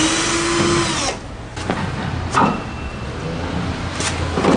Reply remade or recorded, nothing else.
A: recorded